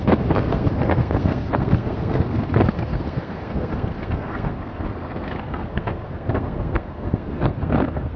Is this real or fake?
fake